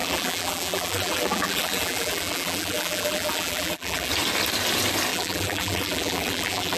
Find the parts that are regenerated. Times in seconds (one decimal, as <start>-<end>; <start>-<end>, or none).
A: 0.0-4.1; 5.1-6.8

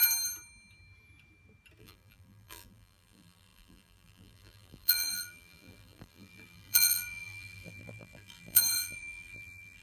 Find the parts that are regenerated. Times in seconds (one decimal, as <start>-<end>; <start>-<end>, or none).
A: 1.8-9.8

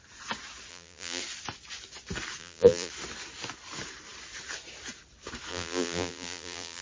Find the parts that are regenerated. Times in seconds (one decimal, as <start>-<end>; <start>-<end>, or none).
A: 0.7-1.2; 2.4-2.9; 5.5-6.8

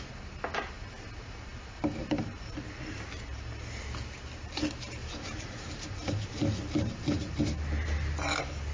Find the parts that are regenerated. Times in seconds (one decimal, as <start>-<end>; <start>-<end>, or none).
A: 5.0-7.4

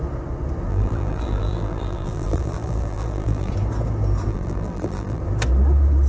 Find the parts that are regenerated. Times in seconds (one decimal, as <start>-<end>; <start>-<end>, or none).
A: 0.7-3.5; 4.3-5.2

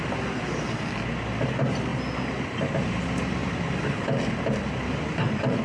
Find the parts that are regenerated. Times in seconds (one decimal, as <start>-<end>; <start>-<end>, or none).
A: 3.4-5.0

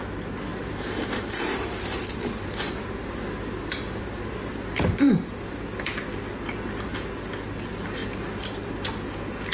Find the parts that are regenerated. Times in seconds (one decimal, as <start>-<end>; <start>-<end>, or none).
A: 0.5-5.1; 8.0-8.6